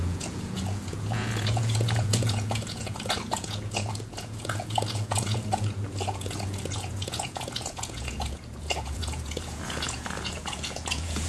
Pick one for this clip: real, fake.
fake